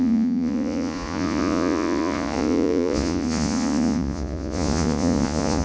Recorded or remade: remade